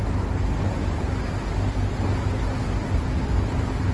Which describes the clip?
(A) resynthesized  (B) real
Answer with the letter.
B